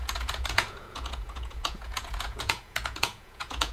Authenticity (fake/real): fake